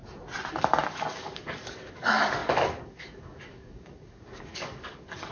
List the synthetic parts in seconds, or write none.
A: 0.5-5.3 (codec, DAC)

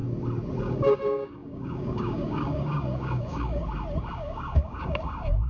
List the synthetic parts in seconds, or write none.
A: 0.6-3.6 (codec, DAC); 4.1-5.5

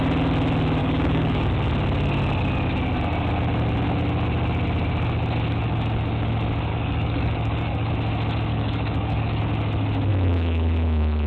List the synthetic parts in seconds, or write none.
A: 0.8-1.5 (codec, DAC); 6.7-7.9; 8.5-9.4; 10.1-11.3

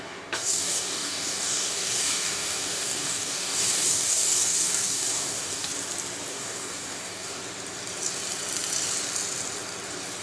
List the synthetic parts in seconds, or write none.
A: 0.0-5.7 (codec, DAC); 6.3-7.4

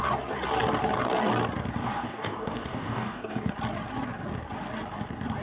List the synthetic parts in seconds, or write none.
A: 1.8-3.5 (codec, DAC)